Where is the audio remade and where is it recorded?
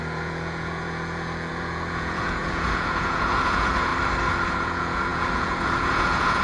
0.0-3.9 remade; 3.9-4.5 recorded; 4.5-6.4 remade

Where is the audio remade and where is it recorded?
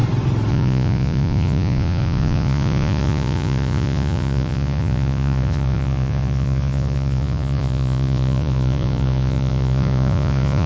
0.0-0.5 recorded; 0.5-10.7 remade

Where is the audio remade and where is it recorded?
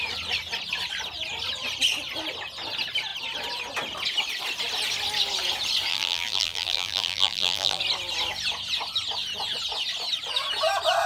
0.0-5.9 recorded; 5.9-7.8 remade; 7.8-11.1 recorded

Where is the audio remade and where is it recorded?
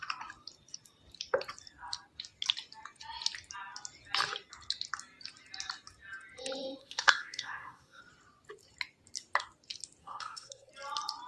0.0-6.8 recorded; 6.8-8.0 remade; 8.0-10.0 recorded; 10.0-10.7 remade; 10.7-11.3 recorded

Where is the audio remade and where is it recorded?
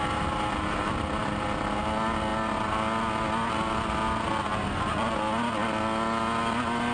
0.0-6.9 recorded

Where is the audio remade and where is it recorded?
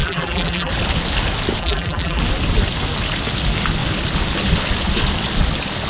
0.0-0.7 remade; 0.7-1.6 recorded; 1.6-2.2 remade; 2.2-5.9 recorded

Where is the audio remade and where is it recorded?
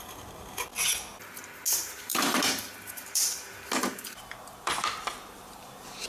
0.0-0.7 remade; 0.7-1.7 recorded; 1.7-6.1 remade